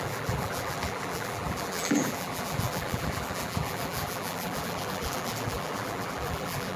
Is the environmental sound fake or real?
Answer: fake